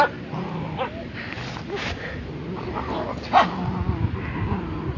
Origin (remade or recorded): recorded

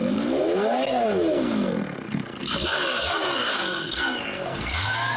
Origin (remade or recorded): remade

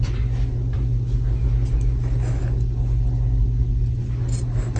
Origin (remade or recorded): recorded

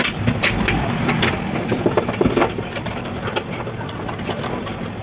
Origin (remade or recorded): remade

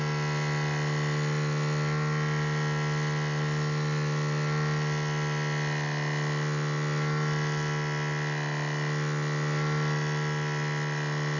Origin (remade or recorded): recorded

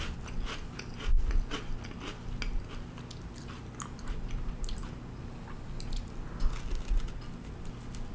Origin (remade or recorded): recorded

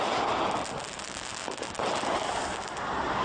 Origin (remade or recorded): recorded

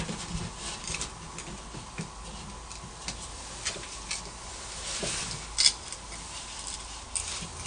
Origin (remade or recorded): recorded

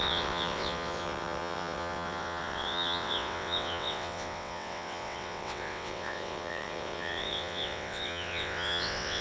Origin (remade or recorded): remade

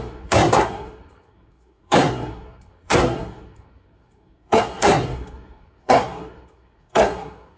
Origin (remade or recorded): remade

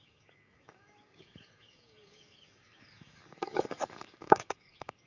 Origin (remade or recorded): remade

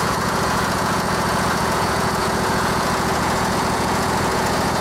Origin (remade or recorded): remade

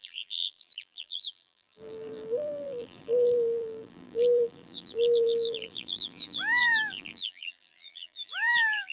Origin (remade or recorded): remade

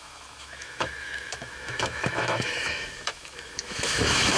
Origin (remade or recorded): remade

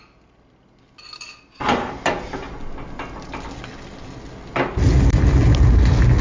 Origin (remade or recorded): recorded